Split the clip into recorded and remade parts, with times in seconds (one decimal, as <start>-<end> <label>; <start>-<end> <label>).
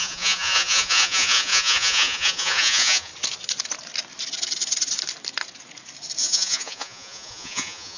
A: 0.0-3.1 remade; 3.1-6.2 recorded; 6.2-8.0 remade